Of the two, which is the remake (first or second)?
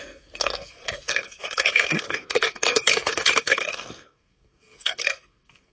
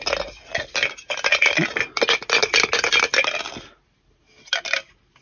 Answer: first